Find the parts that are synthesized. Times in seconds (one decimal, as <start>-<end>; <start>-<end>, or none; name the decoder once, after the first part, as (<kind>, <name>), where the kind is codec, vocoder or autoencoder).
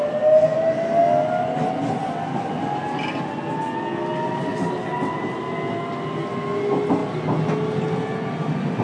4.5-5.4 (vocoder, BigVGAN v2)